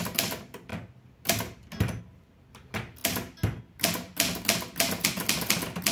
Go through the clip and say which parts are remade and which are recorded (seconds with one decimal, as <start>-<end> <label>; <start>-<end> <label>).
0.0-5.9 recorded